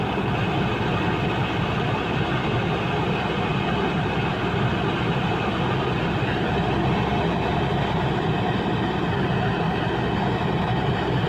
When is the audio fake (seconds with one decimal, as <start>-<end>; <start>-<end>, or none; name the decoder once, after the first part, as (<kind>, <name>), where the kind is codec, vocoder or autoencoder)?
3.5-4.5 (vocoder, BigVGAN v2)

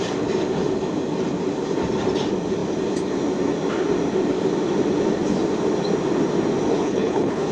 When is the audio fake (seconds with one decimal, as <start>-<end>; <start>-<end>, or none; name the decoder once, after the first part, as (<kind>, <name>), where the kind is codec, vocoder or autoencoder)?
6.7-7.5 (codec, HILCodec)

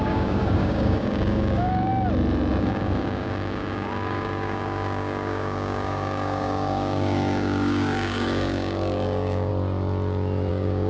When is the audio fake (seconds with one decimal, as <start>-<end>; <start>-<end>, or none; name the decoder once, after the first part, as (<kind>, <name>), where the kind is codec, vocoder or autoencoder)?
0.0-1.9 (codec, DAC); 2.6-9.5; 10.5-10.9

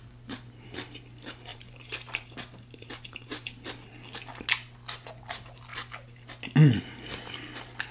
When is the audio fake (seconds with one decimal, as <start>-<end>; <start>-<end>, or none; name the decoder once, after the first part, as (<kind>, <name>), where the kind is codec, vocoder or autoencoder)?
1.5-3.9 (vocoder, BigVGAN v2)

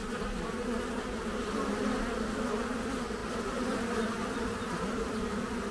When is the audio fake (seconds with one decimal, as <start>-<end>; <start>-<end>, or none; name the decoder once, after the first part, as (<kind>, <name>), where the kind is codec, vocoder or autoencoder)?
0.0-1.0 (vocoder, BigVGAN v2); 3.2-5.7

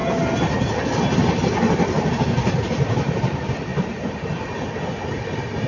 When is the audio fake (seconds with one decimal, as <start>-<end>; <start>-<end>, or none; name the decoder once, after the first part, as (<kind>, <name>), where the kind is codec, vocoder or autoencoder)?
none